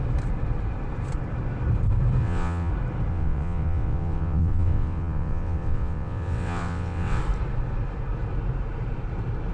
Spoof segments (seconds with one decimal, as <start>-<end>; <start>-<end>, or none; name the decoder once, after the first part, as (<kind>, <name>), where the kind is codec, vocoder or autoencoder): 2.2-2.7 (vocoder, WaveNeXt); 3.1-7.2